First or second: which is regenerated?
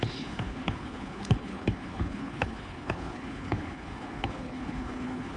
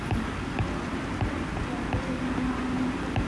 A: first